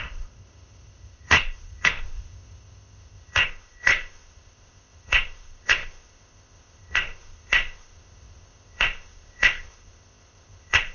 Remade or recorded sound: remade